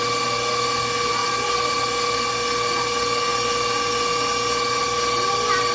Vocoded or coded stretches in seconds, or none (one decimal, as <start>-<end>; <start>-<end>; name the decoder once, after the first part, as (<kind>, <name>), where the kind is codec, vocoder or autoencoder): none